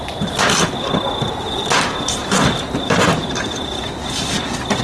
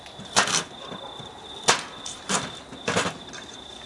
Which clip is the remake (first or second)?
first